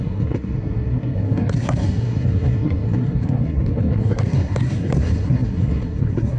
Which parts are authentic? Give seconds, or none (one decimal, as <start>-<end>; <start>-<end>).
none